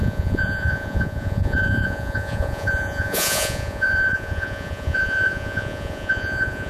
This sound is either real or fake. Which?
fake